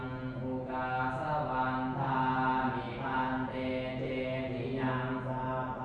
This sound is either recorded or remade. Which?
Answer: recorded